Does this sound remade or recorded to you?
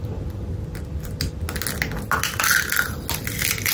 recorded